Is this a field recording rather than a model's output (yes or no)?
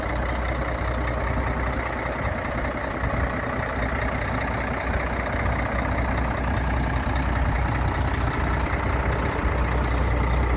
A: yes